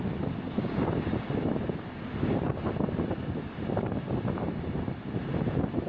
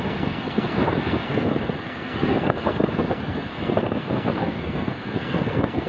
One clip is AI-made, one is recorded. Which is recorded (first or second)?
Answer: first